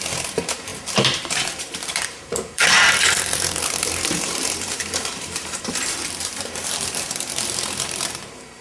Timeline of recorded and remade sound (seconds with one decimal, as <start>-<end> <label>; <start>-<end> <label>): 0.0-8.6 remade